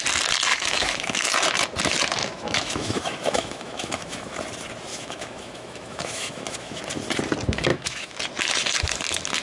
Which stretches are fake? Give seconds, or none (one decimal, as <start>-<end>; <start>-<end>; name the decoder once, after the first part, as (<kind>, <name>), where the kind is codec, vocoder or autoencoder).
0.5-1.3 (autoencoder, DAC-VAE); 2.2-4.4; 4.9-6.8; 7.7-8.2